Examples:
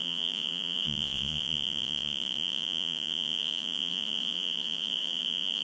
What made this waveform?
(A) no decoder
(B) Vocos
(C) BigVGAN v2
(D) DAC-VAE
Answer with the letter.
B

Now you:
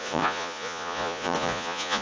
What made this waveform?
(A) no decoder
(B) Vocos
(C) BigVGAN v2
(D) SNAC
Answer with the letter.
B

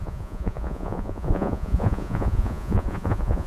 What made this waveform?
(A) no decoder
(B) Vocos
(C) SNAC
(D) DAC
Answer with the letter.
B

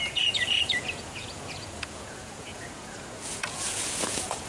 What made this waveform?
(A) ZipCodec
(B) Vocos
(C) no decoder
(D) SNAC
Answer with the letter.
B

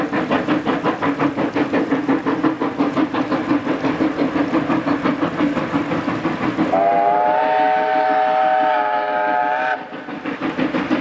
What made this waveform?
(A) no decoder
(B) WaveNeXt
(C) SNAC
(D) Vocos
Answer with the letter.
A